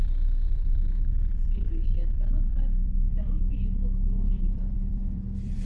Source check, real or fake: fake